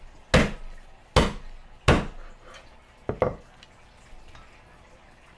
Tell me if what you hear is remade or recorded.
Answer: recorded